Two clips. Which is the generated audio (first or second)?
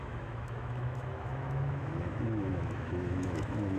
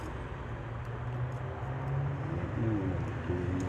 first